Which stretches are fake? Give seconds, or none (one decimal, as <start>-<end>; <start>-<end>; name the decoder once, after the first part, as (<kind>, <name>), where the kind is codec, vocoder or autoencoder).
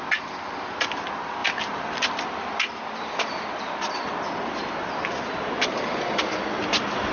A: 4.4-6.2 (vocoder, BigVGAN v2)